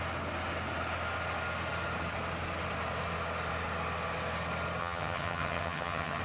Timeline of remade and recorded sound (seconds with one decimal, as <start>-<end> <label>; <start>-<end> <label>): 0.0-4.8 recorded; 4.8-6.2 remade